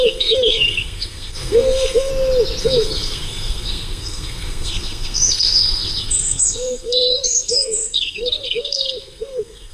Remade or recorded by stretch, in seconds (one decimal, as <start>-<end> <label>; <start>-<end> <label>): 0.0-2.1 remade; 2.1-2.6 recorded; 2.6-9.7 remade